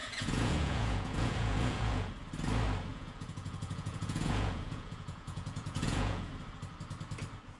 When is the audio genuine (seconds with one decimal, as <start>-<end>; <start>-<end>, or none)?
2.1-2.9; 6.3-7.6